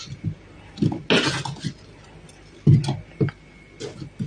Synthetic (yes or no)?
no